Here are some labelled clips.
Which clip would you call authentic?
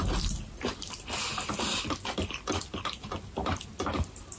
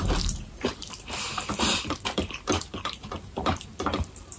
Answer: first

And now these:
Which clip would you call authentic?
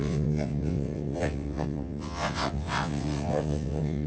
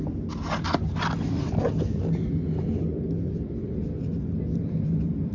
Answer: second